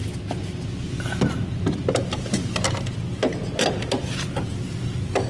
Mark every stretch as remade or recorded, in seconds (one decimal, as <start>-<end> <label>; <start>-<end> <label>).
0.0-5.3 recorded